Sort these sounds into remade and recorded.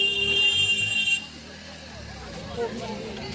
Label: recorded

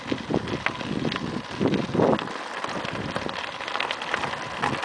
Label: recorded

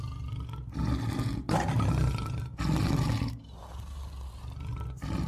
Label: recorded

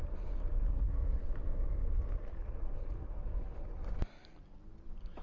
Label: recorded